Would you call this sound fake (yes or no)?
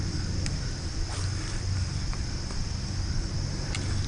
no